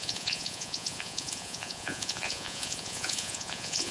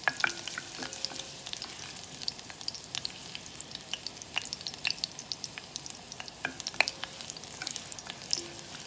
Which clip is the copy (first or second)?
first